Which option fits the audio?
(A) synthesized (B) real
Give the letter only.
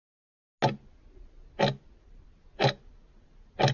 B